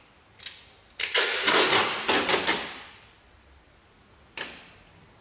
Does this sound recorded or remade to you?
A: recorded